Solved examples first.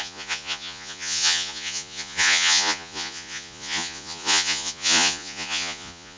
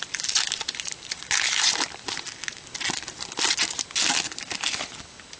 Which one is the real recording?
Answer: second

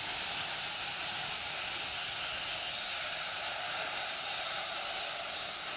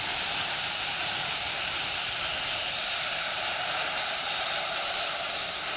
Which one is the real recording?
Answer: first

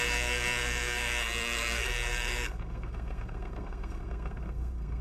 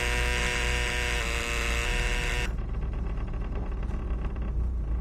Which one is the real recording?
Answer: second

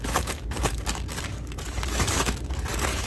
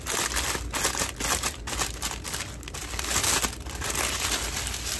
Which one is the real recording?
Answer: second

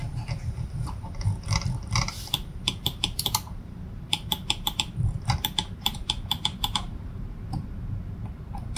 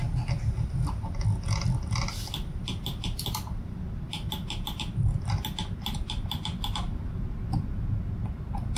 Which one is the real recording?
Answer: second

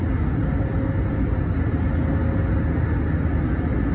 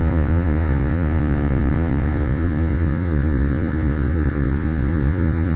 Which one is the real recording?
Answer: first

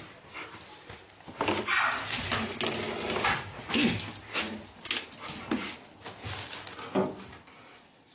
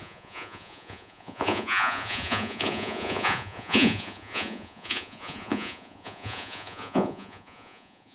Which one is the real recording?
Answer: first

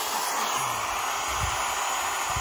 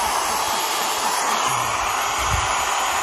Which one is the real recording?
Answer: first